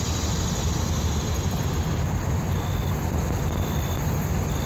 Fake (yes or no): no